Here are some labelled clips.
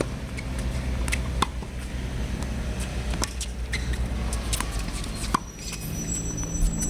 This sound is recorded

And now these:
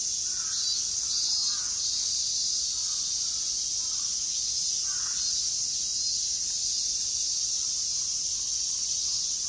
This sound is recorded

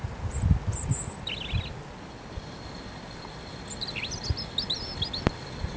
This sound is recorded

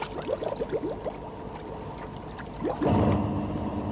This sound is recorded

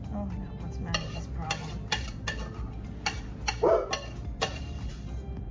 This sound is recorded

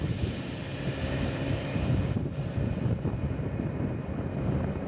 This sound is remade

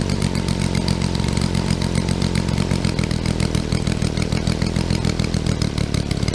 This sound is recorded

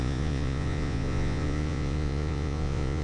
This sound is remade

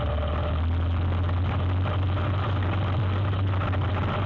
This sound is recorded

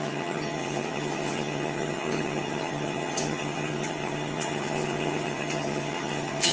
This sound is remade